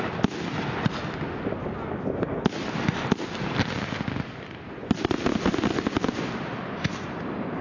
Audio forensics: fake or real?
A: real